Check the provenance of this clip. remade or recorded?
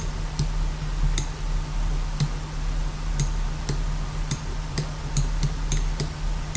remade